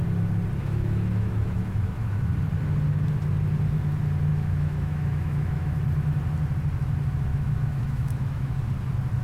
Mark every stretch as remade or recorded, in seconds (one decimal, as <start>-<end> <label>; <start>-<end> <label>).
0.0-0.6 recorded; 0.6-2.3 remade; 2.3-4.3 recorded; 4.3-5.8 remade; 5.8-7.3 recorded; 7.3-8.6 remade; 8.6-9.2 recorded